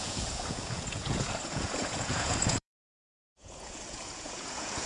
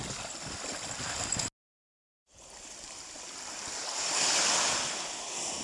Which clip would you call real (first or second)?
second